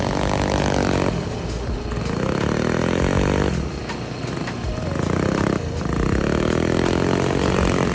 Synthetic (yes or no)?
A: no